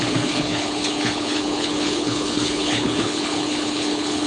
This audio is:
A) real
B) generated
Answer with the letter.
B